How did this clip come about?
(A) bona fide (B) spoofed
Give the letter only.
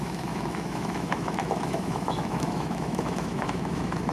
B